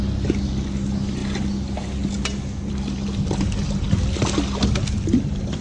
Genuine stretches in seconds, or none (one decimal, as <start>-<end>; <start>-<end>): 0.0-5.6